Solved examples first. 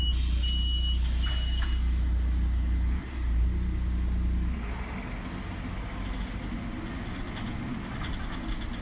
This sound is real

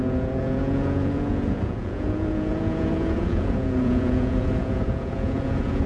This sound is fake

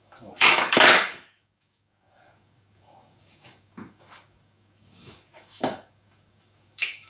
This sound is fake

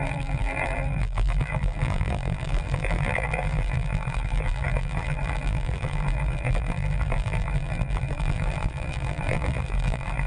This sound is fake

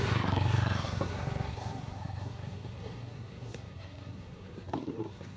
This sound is fake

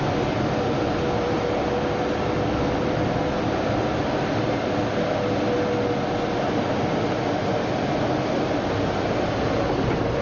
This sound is real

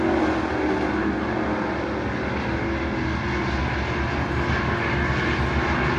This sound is real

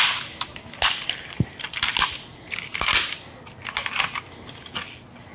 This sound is real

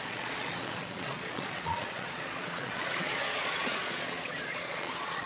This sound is fake